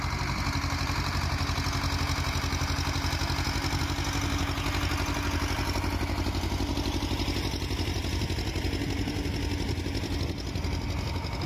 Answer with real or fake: real